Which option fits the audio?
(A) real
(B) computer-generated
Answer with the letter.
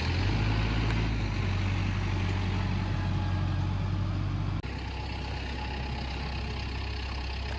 A